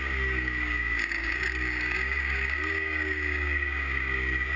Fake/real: fake